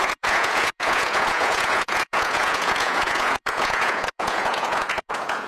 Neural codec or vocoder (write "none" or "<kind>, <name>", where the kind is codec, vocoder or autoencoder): vocoder, Vocos